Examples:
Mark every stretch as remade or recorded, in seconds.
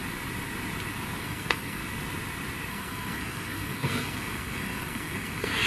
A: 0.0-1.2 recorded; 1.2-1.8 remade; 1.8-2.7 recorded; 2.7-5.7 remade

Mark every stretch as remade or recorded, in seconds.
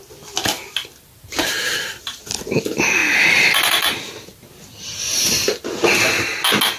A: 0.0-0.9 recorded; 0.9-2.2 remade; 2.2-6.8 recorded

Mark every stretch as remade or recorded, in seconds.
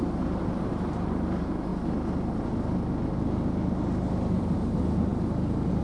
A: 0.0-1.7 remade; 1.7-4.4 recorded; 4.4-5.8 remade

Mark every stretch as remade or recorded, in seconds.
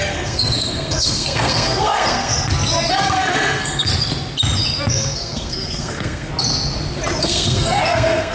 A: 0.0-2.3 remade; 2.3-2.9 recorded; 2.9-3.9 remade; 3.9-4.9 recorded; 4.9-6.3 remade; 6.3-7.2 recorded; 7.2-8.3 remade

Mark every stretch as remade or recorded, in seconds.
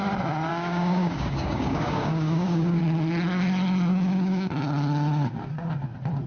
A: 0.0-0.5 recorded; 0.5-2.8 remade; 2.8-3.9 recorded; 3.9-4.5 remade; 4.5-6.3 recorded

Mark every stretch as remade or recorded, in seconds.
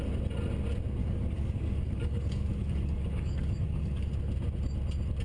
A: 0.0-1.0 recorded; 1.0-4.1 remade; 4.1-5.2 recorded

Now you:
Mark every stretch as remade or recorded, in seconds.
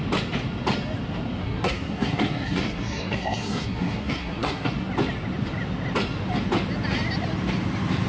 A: 0.0-1.4 recorded; 1.4-4.7 remade; 4.7-8.1 recorded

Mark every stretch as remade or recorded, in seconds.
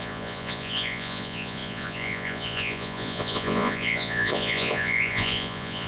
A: 0.0-5.9 remade